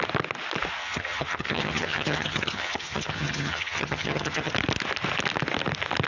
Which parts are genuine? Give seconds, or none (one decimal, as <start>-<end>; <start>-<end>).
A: 0.0-0.8; 4.5-6.1